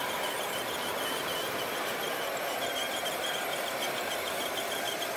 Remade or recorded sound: recorded